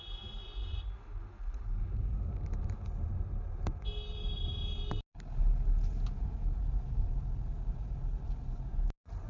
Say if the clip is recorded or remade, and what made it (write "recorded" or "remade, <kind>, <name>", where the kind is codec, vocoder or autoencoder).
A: recorded